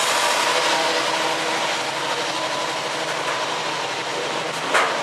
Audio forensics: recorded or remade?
recorded